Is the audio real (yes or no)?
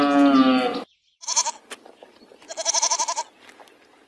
yes